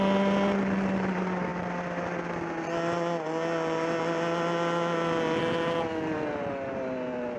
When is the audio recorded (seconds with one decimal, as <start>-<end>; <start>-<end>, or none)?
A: 0.0-7.4